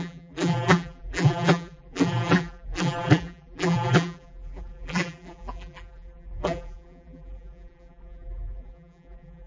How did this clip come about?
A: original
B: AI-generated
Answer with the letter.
B